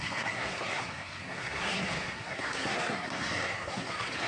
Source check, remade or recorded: remade